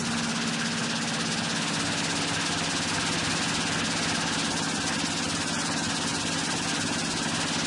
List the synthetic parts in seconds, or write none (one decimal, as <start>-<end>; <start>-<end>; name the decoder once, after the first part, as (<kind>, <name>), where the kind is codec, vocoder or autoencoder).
none